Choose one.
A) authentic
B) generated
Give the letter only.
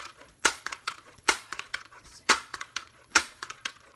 B